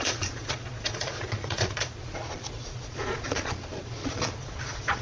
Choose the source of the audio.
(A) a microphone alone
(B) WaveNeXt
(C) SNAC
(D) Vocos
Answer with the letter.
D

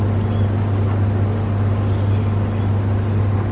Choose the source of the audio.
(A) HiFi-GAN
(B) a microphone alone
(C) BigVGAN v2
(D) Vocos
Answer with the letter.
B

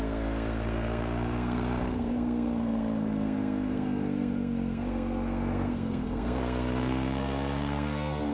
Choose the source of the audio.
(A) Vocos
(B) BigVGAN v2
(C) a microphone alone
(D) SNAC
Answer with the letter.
D